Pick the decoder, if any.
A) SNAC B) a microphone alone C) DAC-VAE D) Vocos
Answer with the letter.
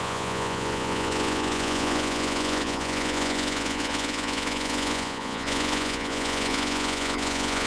D